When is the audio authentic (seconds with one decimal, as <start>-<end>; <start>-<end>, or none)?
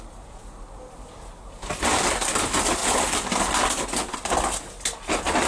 0.0-5.5